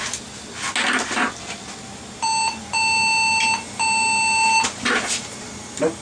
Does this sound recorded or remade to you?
recorded